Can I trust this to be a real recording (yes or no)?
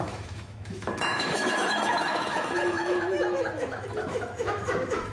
no